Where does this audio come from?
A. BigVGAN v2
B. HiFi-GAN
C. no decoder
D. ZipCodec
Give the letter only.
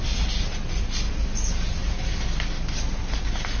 C